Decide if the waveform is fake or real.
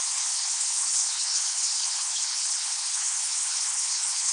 fake